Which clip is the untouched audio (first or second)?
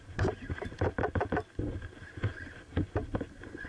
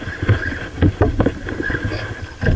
first